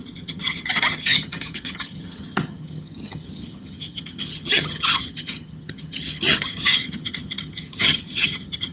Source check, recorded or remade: remade